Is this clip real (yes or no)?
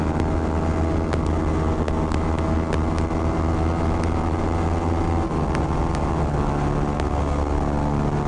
yes